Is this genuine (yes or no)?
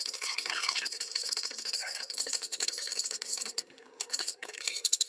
no